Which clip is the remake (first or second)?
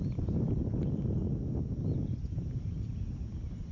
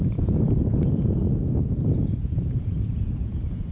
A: second